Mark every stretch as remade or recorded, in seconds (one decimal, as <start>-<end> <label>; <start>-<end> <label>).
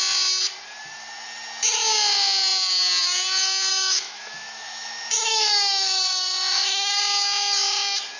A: 0.0-3.7 recorded; 3.7-7.0 remade; 7.0-8.2 recorded